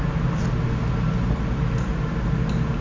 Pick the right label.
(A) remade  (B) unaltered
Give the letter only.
B